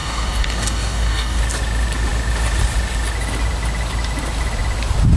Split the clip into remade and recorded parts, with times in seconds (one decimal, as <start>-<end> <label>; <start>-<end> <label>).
0.0-1.4 remade; 1.4-5.2 recorded